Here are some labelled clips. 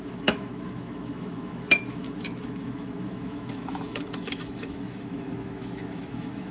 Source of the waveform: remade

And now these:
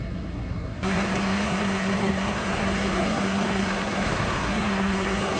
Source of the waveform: remade